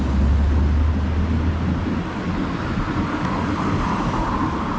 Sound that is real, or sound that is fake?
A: real